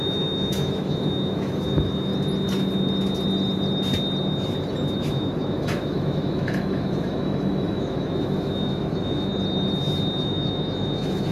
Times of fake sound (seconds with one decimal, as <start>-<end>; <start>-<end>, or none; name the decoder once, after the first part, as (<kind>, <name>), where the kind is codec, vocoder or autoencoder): 0.0-2.1 (autoencoder, DAC-VAE); 5.0-9.3; 10.2-11.3